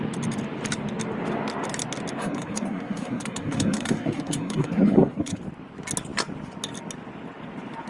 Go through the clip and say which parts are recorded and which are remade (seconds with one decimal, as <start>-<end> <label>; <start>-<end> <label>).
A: 0.0-2.2 recorded; 2.2-5.4 remade; 5.4-7.9 recorded